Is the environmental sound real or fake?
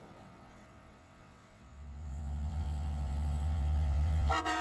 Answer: fake